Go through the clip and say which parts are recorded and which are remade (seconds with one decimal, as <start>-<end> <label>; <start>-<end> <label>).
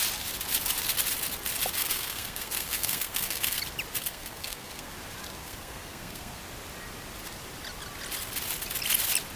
0.0-1.8 recorded; 1.8-3.6 remade; 3.6-4.0 recorded; 4.0-4.9 remade; 4.9-5.4 recorded; 5.4-6.4 remade; 6.4-9.4 recorded